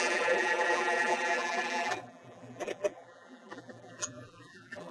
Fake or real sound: fake